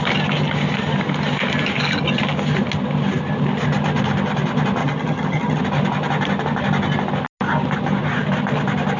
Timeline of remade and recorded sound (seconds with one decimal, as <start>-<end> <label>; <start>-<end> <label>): 0.0-4.8 recorded; 4.8-5.6 remade; 5.6-9.0 recorded